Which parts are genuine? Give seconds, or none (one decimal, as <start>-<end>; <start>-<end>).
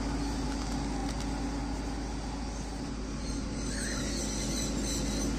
0.0-5.4